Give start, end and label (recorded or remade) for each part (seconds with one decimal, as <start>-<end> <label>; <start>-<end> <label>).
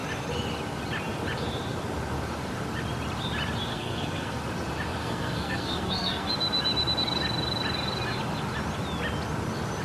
0.0-3.7 recorded; 3.7-4.4 remade; 4.4-5.0 recorded; 5.0-6.3 remade; 6.3-9.8 recorded